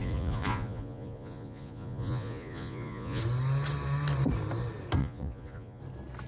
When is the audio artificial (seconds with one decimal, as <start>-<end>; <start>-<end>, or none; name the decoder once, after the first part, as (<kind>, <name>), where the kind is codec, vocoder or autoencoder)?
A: 0.0-3.2 (vocoder, Vocos); 5.0-5.8